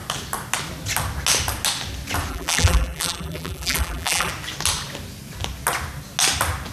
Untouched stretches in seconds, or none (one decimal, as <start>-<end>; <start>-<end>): 0.0-2.3; 4.3-6.7